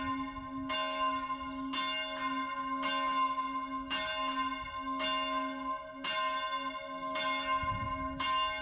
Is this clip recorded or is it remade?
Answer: recorded